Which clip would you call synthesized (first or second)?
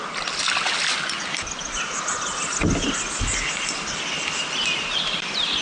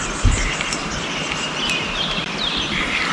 second